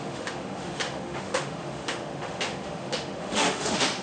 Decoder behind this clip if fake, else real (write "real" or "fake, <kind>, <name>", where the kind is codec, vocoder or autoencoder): fake, autoencoder, DAC-VAE